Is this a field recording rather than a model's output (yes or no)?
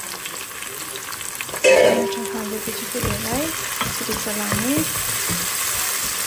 yes